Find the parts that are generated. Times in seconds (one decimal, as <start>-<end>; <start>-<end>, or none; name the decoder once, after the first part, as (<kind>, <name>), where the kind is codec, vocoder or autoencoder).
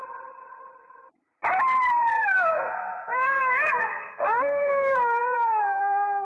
2.1-6.2 (codec, SNAC)